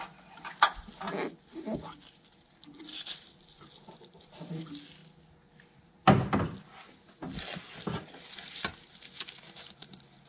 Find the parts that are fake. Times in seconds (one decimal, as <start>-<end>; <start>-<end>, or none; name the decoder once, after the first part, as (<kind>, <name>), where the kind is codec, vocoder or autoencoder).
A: none